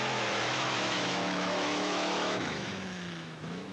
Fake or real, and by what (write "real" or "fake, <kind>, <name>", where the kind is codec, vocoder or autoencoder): fake, autoencoder, DAC-VAE